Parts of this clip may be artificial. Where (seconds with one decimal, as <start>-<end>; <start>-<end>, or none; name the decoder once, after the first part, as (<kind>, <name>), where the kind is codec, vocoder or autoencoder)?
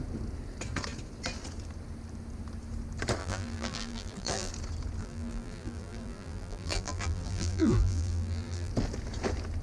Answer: 3.2-4.5 (vocoder, BigVGAN v2); 5.0-8.7